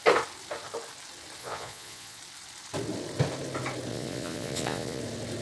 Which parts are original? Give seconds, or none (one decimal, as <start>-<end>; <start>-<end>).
0.0-1.4; 2.2-3.9; 5.0-5.4